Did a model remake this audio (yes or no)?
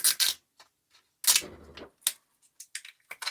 no